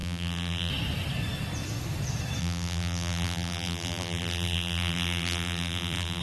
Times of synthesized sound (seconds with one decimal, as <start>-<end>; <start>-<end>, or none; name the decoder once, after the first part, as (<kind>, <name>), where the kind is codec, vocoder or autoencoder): 0.0-0.7 (vocoder, BigVGAN v2); 2.4-6.2